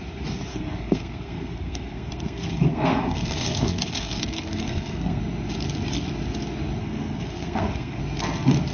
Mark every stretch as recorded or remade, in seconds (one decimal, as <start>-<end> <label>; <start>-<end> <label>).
0.0-0.5 recorded; 0.5-5.2 remade; 5.2-6.8 recorded; 6.8-8.0 remade; 8.0-8.7 recorded